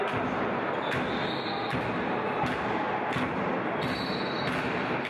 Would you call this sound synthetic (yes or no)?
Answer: no